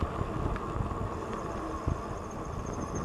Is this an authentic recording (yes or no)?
yes